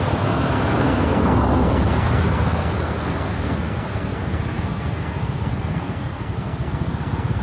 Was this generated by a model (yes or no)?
yes